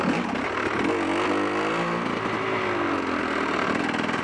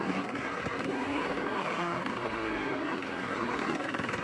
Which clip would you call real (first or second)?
first